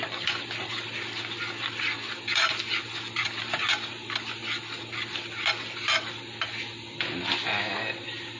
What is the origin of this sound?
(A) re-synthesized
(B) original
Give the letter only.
B